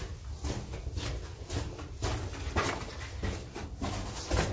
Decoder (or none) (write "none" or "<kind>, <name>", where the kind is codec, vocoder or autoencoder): none